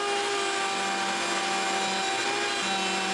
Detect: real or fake real